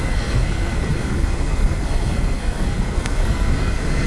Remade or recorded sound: remade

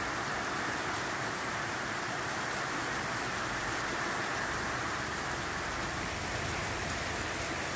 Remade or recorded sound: remade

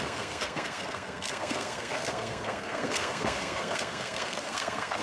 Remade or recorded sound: remade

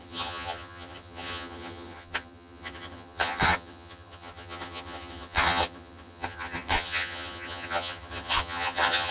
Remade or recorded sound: remade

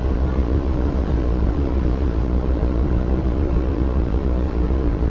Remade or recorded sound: remade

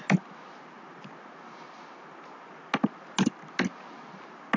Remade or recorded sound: recorded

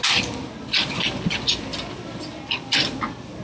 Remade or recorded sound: recorded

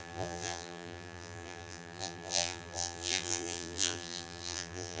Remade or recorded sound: remade